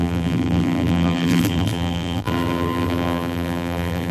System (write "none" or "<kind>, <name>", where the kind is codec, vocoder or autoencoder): vocoder, BigVGAN v2